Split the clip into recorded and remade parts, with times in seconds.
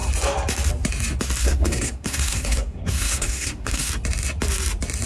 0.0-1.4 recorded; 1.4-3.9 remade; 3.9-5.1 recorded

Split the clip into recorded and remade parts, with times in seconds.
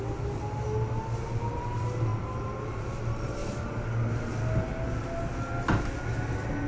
0.0-6.7 recorded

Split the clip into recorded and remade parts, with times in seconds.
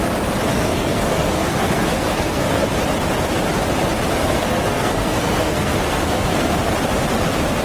0.0-0.5 recorded; 0.5-2.7 remade; 2.7-4.2 recorded; 4.2-6.5 remade; 6.5-7.6 recorded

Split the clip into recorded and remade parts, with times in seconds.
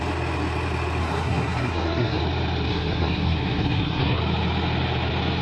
0.0-1.0 recorded; 1.0-2.2 remade; 2.2-2.7 recorded; 2.7-4.2 remade; 4.2-5.4 recorded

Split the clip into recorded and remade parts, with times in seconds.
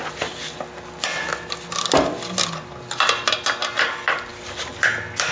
0.0-5.3 recorded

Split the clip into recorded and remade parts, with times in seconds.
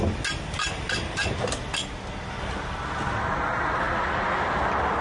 0.0-5.0 recorded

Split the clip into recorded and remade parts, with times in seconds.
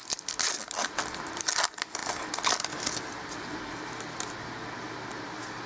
0.0-5.7 recorded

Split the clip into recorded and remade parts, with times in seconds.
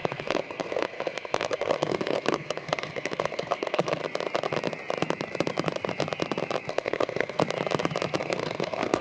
0.0-4.0 remade; 4.0-6.7 recorded; 6.7-7.4 remade; 7.4-8.2 recorded; 8.2-9.0 remade